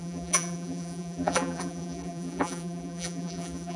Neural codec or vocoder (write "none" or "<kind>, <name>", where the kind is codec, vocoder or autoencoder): vocoder, BigVGAN v2